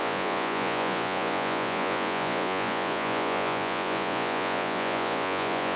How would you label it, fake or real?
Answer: fake